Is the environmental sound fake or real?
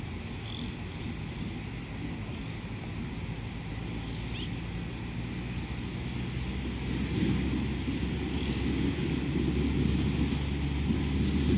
real